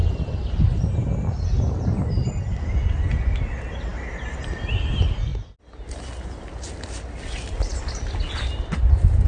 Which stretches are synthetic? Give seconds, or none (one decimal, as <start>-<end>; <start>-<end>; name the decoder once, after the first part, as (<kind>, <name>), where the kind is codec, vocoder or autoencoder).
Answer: none